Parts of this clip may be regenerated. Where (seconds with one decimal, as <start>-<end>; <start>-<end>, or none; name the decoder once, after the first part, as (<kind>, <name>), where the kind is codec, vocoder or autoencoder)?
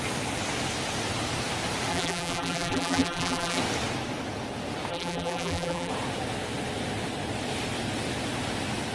1.9-3.6 (vocoder, BigVGAN v2); 4.9-5.9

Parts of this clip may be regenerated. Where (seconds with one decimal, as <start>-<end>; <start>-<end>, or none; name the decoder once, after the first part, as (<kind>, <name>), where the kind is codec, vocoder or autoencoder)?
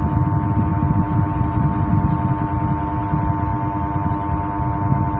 none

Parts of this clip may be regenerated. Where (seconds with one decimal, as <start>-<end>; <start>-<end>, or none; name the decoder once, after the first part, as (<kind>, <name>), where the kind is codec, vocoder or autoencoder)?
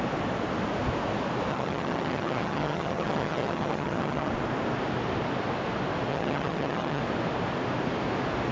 1.5-4.3 (vocoder, HiFi-GAN); 6.1-7.0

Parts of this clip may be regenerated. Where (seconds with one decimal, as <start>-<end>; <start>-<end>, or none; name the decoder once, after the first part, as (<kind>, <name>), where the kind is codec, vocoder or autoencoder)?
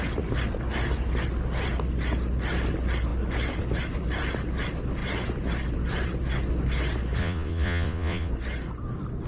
7.2-8.3 (vocoder, Vocos)